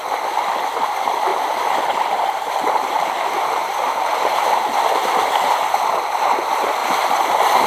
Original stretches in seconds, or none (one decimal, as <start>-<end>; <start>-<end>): 0.0-1.3; 4.8-6.8